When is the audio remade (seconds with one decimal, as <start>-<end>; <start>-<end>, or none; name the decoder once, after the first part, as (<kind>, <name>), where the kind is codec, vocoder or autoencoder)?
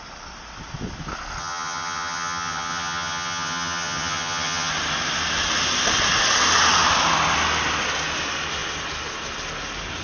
1.4-4.7 (vocoder, HiFi-GAN)